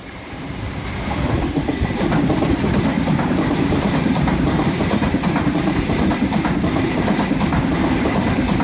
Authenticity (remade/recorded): remade